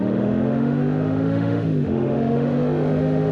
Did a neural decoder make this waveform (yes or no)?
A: yes